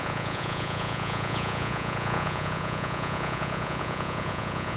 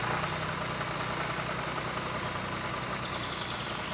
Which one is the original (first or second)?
second